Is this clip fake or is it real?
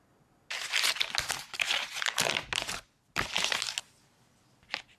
real